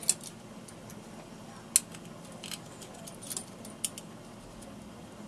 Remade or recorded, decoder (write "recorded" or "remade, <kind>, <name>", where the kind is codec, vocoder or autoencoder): recorded